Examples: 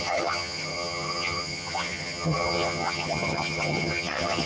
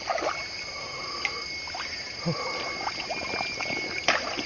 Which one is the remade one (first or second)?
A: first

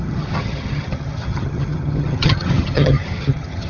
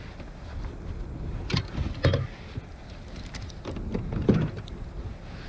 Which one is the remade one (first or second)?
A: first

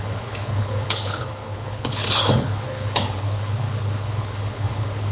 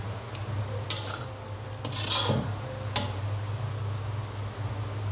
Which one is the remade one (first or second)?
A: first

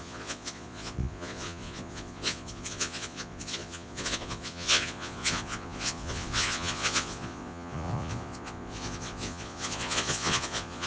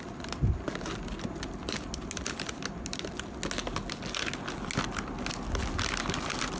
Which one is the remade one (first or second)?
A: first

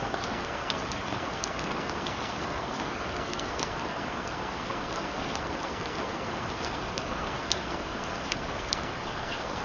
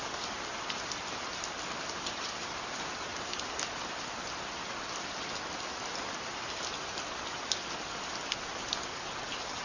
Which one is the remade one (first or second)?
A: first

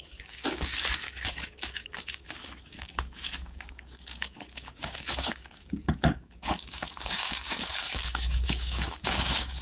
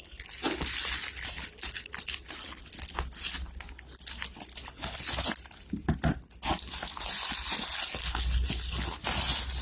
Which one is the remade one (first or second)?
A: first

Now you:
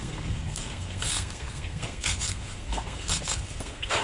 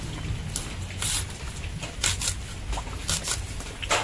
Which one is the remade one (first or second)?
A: first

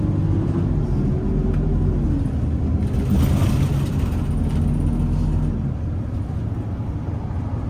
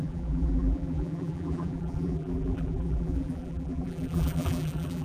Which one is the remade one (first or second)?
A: second